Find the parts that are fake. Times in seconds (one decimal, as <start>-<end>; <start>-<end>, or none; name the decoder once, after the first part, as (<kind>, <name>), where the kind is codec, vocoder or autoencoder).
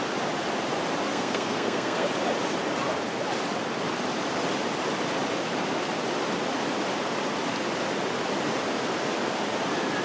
1.1-2.1 (codec, SNAC)